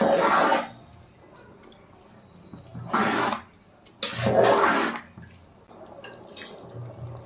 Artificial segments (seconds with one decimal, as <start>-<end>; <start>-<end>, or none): none